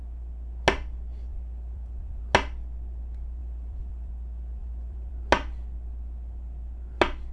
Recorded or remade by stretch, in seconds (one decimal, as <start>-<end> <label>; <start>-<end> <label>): 0.0-1.3 recorded; 1.3-2.2 remade; 2.2-3.4 recorded; 3.4-4.1 remade; 4.1-4.6 recorded; 4.6-5.1 remade; 5.1-7.3 recorded